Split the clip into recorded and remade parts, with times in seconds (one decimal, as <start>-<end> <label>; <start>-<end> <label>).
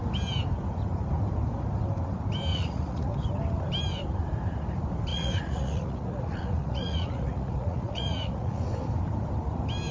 0.0-2.5 recorded; 2.5-3.1 remade; 3.1-5.1 recorded; 5.1-8.6 remade; 8.6-9.9 recorded